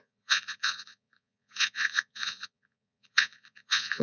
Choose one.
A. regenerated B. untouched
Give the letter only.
A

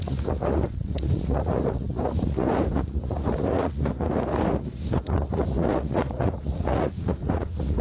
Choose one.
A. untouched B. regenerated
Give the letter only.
B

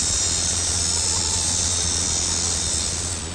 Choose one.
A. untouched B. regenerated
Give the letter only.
B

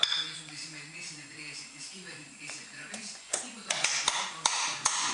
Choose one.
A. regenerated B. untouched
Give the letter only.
A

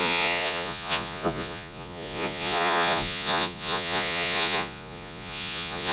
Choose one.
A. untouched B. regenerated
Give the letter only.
B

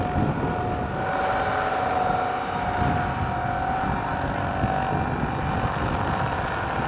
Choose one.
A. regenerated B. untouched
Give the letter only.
B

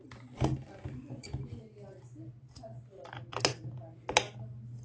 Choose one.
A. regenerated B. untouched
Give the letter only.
B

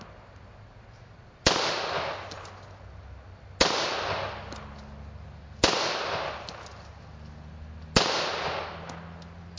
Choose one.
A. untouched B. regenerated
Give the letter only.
A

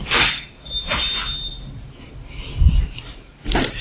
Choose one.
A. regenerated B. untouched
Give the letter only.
B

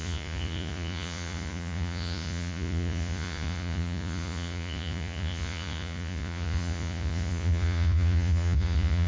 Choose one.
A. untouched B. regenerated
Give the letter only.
B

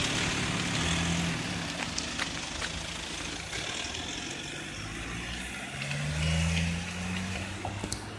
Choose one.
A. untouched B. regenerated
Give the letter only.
A